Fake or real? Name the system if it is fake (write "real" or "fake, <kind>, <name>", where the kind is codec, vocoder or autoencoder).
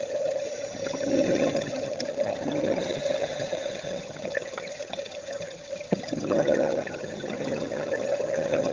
fake, vocoder, HiFi-GAN